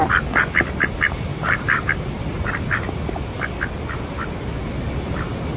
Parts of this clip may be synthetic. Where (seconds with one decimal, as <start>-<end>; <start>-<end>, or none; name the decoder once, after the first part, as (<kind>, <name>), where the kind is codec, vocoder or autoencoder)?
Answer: 1.3-2.5 (vocoder, BigVGAN v2)